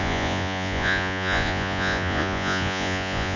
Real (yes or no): no